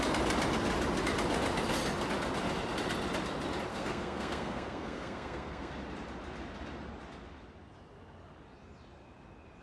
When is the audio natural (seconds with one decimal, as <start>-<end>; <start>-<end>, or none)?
0.0-3.7; 5.7-9.6